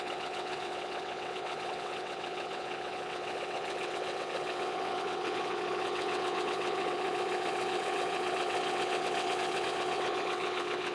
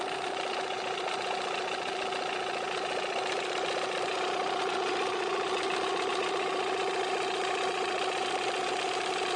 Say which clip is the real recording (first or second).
second